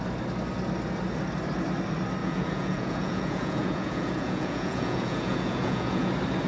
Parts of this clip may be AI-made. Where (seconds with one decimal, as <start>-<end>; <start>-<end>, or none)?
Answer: 2.2-6.1